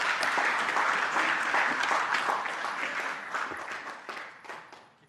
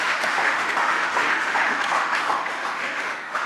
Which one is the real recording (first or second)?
first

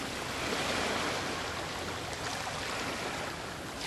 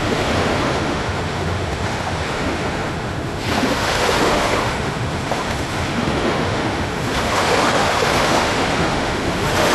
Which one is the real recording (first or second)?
first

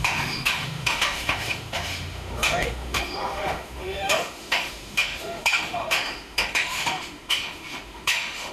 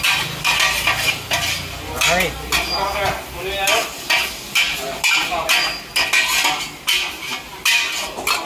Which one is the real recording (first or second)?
second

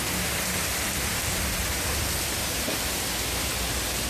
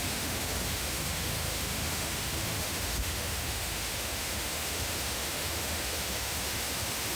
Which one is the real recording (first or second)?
first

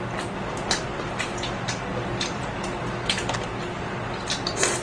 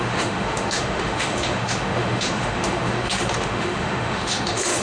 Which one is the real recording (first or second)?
first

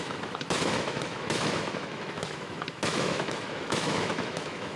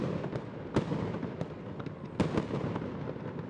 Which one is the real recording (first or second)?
second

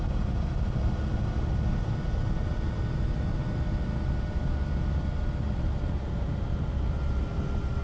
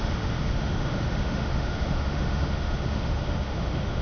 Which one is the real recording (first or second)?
first